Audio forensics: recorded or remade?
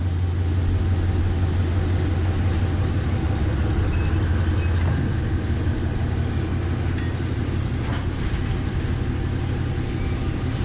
recorded